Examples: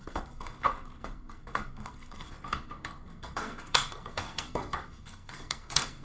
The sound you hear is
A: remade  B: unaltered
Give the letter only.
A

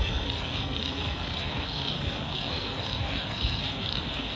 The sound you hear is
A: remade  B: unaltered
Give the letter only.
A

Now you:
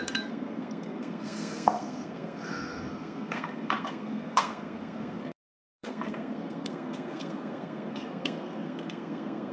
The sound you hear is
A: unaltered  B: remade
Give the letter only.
B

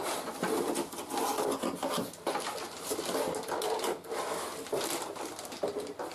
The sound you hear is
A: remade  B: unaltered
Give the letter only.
B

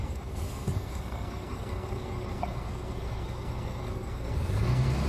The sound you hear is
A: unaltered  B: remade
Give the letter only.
B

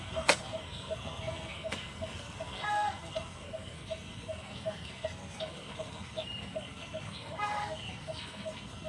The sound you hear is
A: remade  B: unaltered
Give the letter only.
A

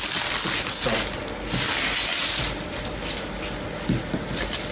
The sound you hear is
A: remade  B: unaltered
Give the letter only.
B